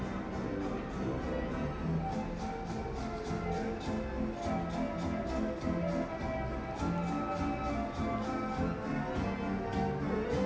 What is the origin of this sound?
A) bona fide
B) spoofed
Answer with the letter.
A